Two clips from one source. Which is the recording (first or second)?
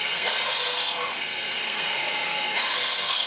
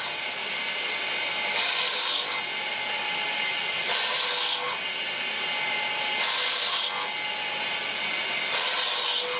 second